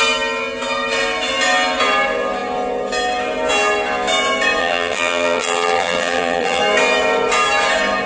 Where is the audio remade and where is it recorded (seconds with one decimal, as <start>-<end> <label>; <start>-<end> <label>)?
0.0-4.6 recorded; 4.6-6.6 remade; 6.6-8.1 recorded